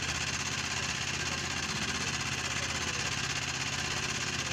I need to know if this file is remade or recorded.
recorded